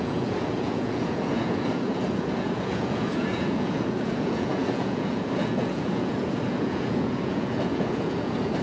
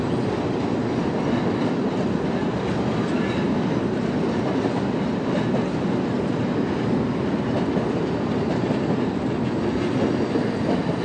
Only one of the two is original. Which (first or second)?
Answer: second